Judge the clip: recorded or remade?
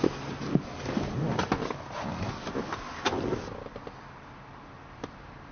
recorded